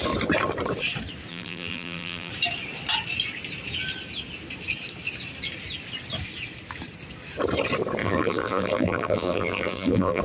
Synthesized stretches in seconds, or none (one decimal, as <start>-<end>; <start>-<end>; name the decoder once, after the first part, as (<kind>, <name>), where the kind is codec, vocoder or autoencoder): 1.3-2.3 (vocoder, BigVGAN v2); 8.0-10.2